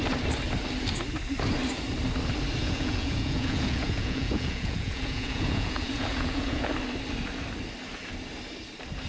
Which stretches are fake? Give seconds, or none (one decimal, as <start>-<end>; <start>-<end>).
2.6-6.7